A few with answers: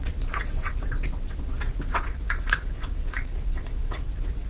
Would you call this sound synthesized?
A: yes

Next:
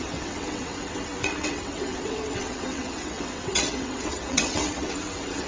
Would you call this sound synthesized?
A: yes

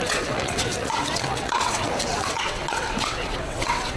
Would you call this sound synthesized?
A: yes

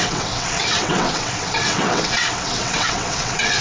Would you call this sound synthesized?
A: yes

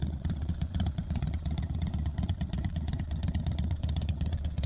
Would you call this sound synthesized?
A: yes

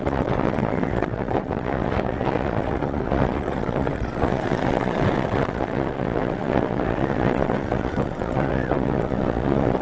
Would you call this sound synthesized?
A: yes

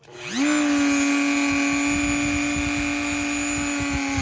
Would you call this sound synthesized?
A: no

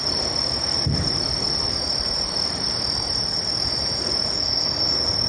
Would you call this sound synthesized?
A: no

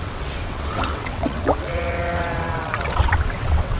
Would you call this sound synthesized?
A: yes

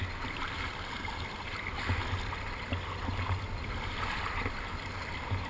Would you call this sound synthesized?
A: no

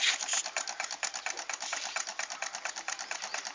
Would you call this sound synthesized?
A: no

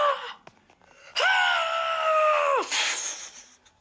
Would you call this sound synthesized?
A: no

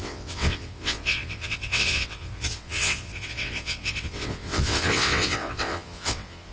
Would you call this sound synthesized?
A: yes